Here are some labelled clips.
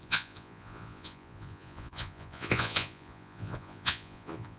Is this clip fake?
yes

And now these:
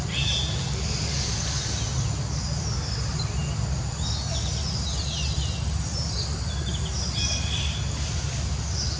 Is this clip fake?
no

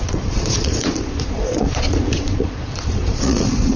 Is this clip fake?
yes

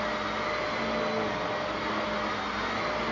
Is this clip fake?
no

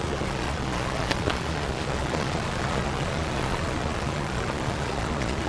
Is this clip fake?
yes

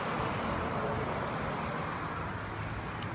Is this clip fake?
no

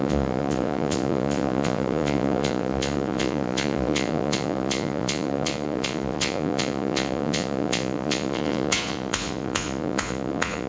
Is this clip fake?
yes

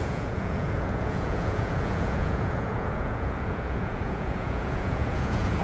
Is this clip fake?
yes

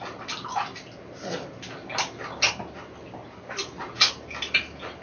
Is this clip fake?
no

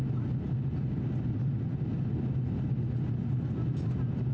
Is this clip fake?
no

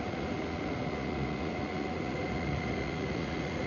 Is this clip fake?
yes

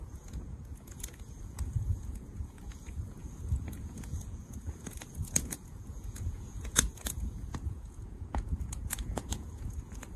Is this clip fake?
yes